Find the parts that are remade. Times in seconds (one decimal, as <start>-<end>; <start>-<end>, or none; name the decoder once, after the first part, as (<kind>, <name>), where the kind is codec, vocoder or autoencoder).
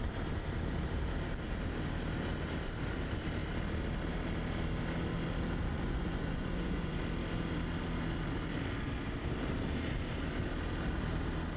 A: 5.7-7.0 (vocoder, Vocos)